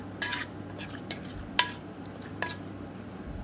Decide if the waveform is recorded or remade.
recorded